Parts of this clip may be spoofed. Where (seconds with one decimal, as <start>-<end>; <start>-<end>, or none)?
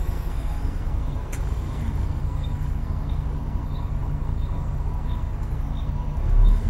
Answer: 0.0-6.7